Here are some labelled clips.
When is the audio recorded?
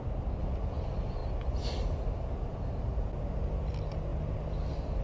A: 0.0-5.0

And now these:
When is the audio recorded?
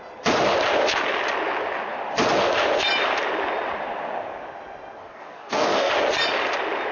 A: 0.0-5.0; 5.9-6.9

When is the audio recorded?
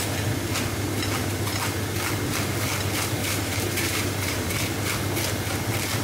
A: 0.0-3.2; 4.5-6.0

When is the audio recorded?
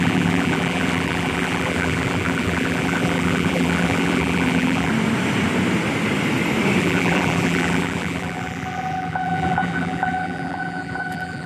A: 4.9-6.8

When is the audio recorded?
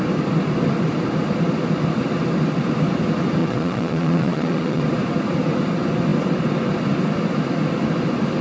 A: 0.0-3.4; 4.8-8.4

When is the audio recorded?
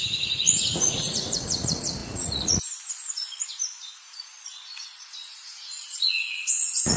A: none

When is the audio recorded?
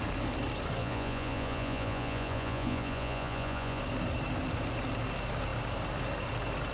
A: 0.0-0.8; 3.8-6.7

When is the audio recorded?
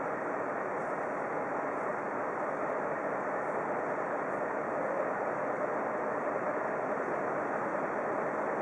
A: 0.0-8.6